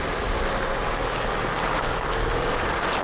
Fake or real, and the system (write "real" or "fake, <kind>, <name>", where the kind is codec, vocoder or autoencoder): real